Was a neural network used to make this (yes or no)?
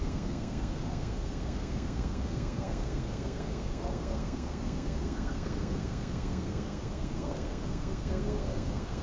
yes